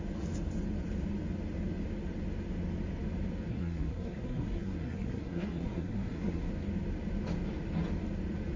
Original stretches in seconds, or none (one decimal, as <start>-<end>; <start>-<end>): 0.0-3.5; 6.5-8.6